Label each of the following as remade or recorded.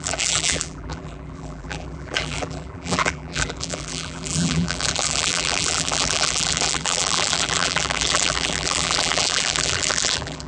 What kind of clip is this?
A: remade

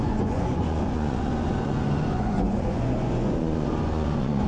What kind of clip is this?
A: remade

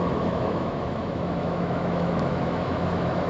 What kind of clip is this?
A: remade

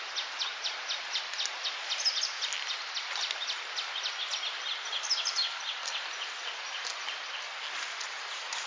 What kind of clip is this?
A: recorded